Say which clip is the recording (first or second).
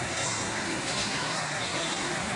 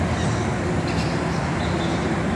second